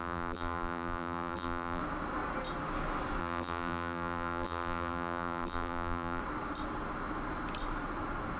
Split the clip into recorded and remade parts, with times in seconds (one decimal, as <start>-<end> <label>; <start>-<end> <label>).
0.0-1.8 remade; 1.8-3.2 recorded; 3.2-6.2 remade; 6.2-8.4 recorded